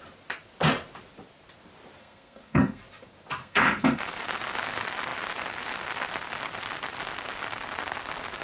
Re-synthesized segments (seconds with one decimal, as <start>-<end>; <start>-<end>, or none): 2.0-2.8; 3.4-4.0